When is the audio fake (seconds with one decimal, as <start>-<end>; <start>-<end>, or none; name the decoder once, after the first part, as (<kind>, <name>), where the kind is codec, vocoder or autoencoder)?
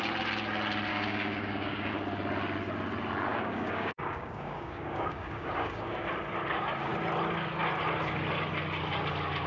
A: 0.9-1.9 (codec, DAC); 3.3-6.1